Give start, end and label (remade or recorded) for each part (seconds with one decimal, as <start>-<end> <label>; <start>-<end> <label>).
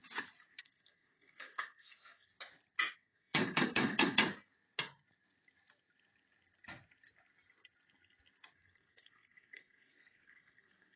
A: 0.0-0.6 recorded; 0.6-2.3 remade; 2.3-2.9 recorded; 2.9-4.2 remade; 4.2-8.5 recorded; 8.5-11.0 remade